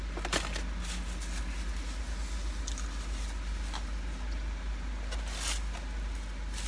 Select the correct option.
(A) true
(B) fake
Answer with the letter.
A